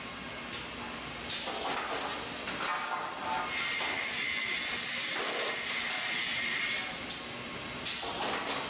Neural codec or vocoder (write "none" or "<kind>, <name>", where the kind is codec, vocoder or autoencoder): none